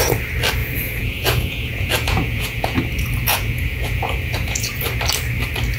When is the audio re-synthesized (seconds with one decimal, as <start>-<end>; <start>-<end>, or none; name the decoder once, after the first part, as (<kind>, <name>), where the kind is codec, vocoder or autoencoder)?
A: 0.6-2.8 (vocoder, Vocos); 3.3-4.8